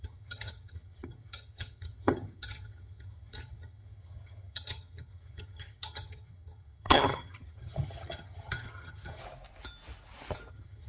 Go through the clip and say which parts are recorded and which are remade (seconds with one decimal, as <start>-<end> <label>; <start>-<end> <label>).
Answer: 0.0-9.2 remade; 9.2-10.5 recorded; 10.5-10.9 remade